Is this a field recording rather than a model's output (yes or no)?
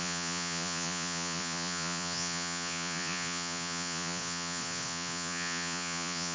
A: no